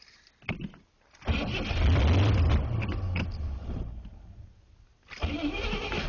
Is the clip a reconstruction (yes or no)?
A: no